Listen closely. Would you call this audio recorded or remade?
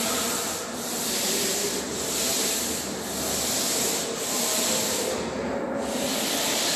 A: recorded